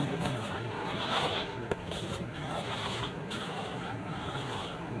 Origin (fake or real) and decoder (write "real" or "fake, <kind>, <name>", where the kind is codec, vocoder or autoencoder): fake, codec, SNAC